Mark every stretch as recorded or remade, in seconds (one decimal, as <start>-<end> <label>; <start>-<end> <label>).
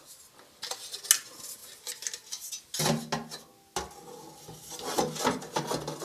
0.0-6.0 recorded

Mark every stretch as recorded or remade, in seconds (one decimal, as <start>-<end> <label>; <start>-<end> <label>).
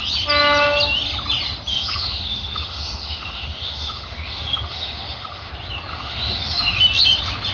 0.0-1.7 recorded; 1.7-5.5 remade; 5.5-5.9 recorded; 5.9-6.8 remade; 6.8-7.5 recorded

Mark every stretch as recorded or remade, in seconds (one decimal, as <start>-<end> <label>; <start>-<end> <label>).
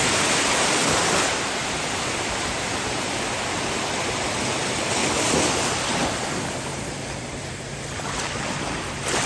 0.0-0.8 recorded; 0.8-3.3 remade; 3.3-5.0 recorded; 5.0-5.8 remade; 5.8-6.7 recorded; 6.7-9.3 remade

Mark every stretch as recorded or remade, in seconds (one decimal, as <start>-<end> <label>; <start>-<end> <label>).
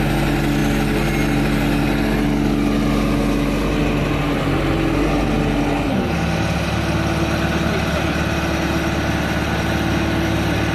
0.0-10.7 recorded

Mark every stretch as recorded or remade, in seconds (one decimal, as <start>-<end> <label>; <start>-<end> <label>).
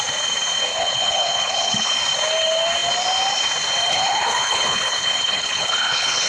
0.0-0.7 recorded; 0.7-2.0 remade; 2.0-3.9 recorded; 3.9-6.3 remade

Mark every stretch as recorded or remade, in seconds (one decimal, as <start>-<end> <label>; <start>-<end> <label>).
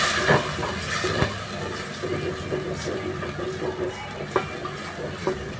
0.0-5.6 recorded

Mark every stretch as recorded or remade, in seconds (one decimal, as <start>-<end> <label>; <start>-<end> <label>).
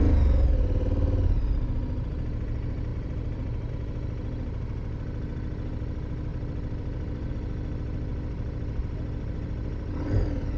0.0-2.9 recorded; 2.9-3.7 remade; 3.7-6.3 recorded; 6.3-7.3 remade; 7.3-8.1 recorded; 8.1-10.6 remade